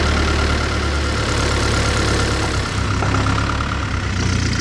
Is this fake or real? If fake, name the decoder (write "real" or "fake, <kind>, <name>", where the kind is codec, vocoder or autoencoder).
real